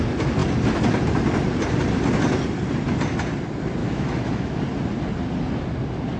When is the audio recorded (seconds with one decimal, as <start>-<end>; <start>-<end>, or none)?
0.0-3.8; 4.6-6.2